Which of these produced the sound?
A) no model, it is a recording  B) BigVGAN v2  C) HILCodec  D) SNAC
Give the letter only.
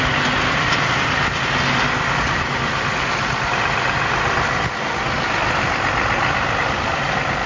A